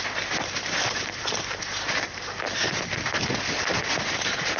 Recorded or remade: remade